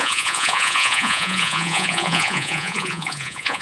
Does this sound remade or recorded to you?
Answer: remade